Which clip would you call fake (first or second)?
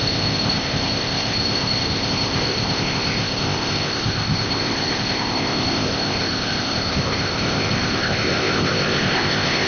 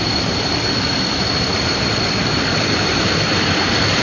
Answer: first